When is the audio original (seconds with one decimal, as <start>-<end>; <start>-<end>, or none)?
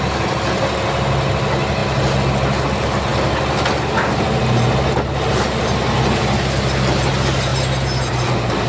0.0-8.7